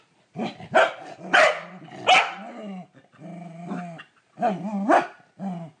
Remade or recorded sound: recorded